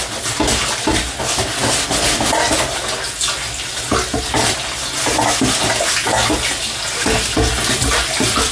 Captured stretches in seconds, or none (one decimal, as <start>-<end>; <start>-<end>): 0.0-8.5